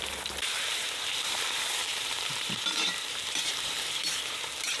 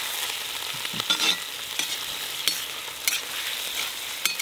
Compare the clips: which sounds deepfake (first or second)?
first